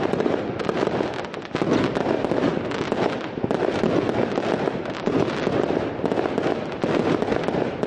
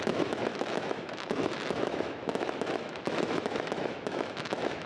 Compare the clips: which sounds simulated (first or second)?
second